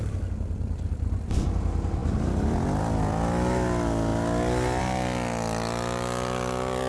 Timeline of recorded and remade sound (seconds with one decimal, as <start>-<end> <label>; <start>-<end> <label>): 0.0-6.9 recorded